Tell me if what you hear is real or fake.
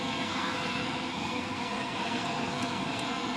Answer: fake